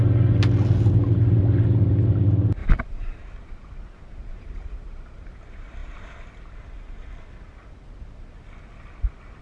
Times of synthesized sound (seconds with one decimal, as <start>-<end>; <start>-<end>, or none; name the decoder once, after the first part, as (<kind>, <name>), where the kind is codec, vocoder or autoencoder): 2.6-3.2 (vocoder, BigVGAN v2); 4.2-5.3